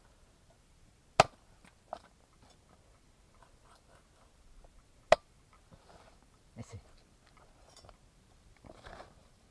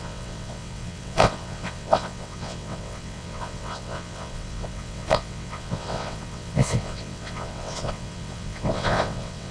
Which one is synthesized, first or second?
second